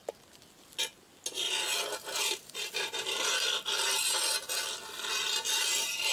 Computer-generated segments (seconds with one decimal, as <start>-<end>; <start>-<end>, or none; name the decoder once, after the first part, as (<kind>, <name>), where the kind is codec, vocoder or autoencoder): 1.9-3.3 (vocoder, BigVGAN v2)